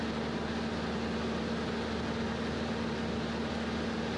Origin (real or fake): real